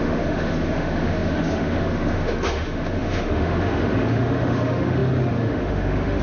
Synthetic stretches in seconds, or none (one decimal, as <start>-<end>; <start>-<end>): 0.0-6.2